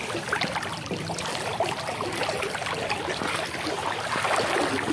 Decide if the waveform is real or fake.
real